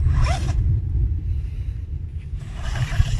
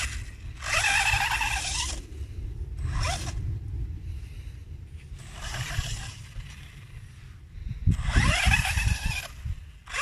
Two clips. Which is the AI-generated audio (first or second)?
first